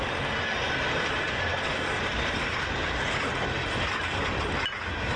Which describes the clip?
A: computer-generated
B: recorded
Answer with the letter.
B